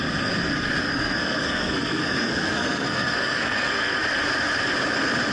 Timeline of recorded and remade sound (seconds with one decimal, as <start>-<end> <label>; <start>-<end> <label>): 0.0-0.8 recorded; 0.8-4.0 remade; 4.0-5.3 recorded